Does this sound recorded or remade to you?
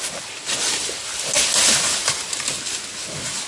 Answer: recorded